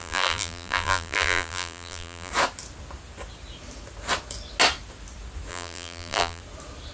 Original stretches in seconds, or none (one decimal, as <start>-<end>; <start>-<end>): 2.3-5.5; 6.4-6.9